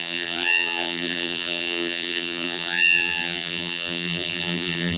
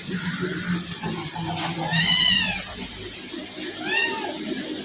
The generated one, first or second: first